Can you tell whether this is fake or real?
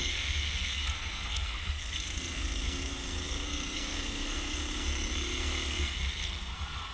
fake